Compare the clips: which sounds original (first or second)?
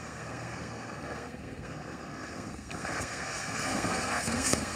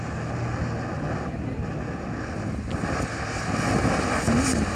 second